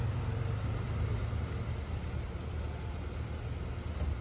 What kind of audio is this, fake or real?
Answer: real